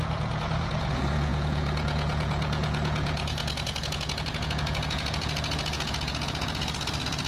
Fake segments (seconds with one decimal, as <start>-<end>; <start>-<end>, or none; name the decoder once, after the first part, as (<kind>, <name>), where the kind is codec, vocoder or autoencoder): 0.0-7.3 (vocoder, Vocos)